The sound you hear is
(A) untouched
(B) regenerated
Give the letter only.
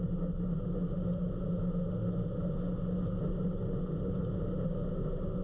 A